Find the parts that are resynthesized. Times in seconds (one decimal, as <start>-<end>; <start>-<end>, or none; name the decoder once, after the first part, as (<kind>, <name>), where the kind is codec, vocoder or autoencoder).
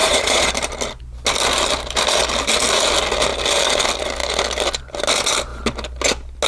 0.0-0.5 (vocoder, Vocos)